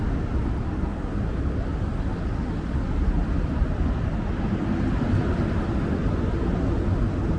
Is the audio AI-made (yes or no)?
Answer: no